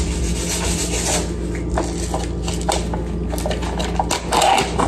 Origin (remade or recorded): recorded